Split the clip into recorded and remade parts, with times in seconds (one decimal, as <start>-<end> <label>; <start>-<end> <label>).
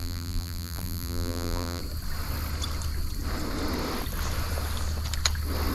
0.0-1.8 remade; 1.8-5.7 recorded